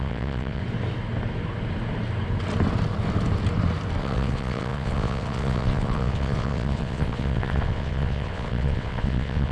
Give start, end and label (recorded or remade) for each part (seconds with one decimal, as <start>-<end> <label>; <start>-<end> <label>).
0.0-0.6 remade; 0.6-4.0 recorded; 4.0-9.5 remade